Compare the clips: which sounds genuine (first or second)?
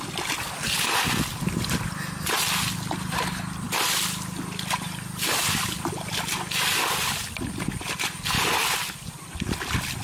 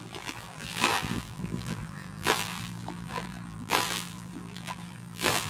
first